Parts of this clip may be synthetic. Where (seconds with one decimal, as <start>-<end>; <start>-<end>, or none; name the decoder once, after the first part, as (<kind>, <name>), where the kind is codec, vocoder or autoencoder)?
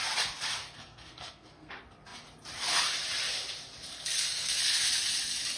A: 0.6-1.7 (codec, SNAC); 3.9-4.8